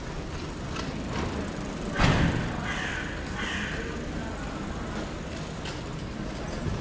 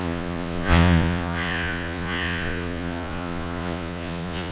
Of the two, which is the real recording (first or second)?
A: first